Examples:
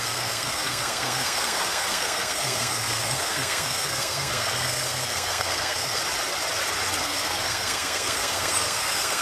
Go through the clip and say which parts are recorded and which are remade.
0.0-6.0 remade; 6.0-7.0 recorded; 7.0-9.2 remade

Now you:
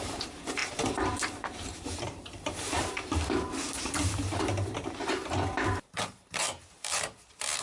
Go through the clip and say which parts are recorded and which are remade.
0.0-7.6 remade

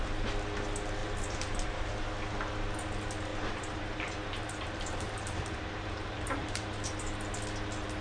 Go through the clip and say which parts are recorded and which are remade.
0.0-1.0 recorded; 1.0-1.9 remade; 1.9-3.3 recorded; 3.3-7.3 remade; 7.3-8.0 recorded

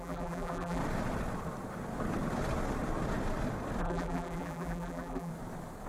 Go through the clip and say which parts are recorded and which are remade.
0.0-0.8 remade; 0.8-3.8 recorded; 3.8-5.3 remade; 5.3-5.9 recorded

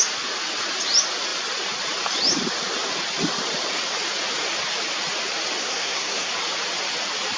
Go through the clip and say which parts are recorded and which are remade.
0.0-5.6 recorded; 5.6-6.3 remade; 6.3-7.4 recorded

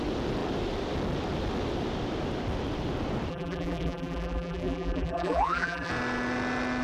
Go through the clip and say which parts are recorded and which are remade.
0.0-3.3 recorded; 3.3-5.9 remade; 5.9-6.8 recorded

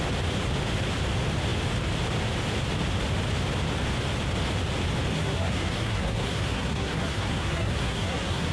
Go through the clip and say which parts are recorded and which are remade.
0.0-5.1 recorded; 5.1-8.5 remade